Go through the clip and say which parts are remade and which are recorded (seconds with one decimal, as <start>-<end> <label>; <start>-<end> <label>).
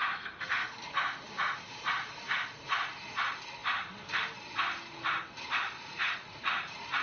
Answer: 0.0-5.9 recorded; 5.9-7.0 remade